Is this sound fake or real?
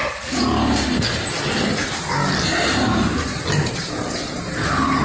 real